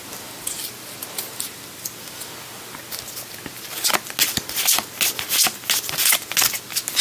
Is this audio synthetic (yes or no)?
no